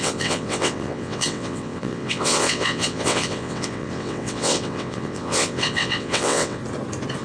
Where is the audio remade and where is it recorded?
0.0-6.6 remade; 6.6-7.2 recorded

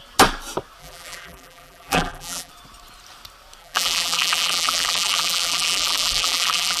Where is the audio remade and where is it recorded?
0.0-0.8 recorded; 0.8-2.5 remade; 2.5-3.6 recorded; 3.6-6.8 remade

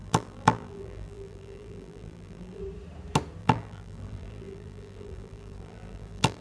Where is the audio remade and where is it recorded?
0.0-2.6 remade; 2.6-3.4 recorded; 3.4-6.4 remade

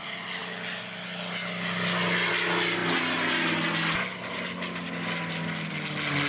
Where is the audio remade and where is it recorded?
0.0-6.3 recorded